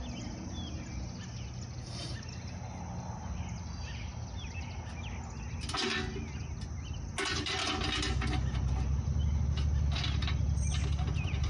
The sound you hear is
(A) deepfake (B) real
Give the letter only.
B